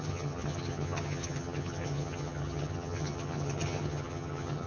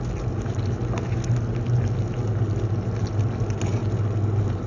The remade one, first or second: first